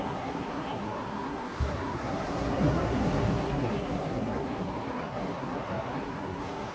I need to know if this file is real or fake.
fake